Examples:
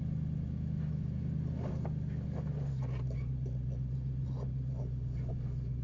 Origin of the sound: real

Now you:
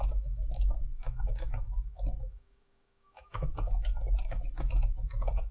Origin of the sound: fake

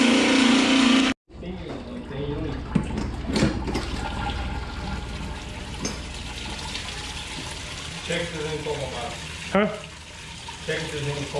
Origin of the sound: real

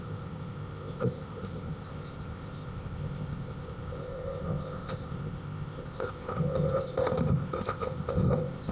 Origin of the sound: fake